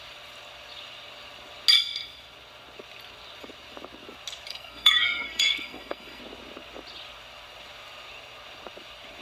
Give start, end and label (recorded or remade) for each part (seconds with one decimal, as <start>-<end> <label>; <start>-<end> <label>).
0.0-4.5 recorded; 4.5-6.2 remade; 6.2-9.2 recorded